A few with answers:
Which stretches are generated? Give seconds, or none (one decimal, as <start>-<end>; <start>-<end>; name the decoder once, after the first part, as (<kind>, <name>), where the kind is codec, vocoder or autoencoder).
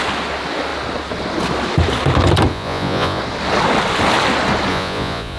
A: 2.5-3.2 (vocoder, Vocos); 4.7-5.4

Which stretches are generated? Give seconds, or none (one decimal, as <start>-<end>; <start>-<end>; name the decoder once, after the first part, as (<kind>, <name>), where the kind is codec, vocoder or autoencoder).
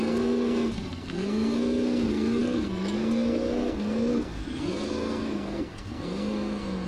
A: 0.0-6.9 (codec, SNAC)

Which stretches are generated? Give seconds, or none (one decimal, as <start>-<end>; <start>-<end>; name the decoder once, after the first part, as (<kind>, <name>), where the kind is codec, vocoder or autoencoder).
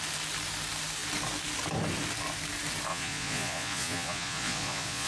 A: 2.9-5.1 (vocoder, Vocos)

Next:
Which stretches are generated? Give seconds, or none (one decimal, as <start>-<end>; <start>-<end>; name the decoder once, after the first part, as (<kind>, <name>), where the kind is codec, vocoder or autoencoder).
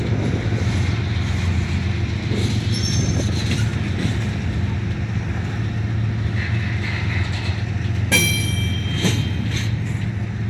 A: none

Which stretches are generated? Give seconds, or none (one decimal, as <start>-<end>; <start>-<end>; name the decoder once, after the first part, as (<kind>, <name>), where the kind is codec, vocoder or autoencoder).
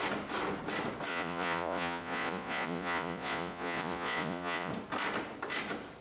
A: 1.1-4.7 (vocoder, Vocos)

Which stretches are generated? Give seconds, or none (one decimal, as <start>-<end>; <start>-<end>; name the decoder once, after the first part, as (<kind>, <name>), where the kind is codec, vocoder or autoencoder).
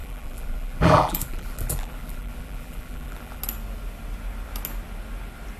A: 0.0-3.4 (vocoder, BigVGAN v2)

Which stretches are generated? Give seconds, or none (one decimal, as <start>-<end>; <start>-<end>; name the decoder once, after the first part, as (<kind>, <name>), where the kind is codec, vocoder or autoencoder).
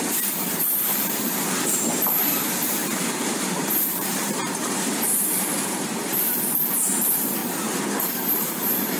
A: 0.0-7.4 (vocoder, BigVGAN v2); 7.9-9.0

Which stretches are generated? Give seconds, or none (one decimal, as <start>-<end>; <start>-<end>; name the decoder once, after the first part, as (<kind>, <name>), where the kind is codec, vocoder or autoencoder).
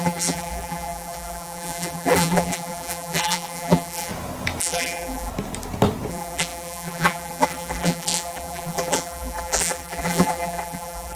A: 0.0-4.1 (vocoder, BigVGAN v2); 4.6-5.3; 6.1-11.2